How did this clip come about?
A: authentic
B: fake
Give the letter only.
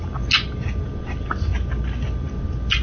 A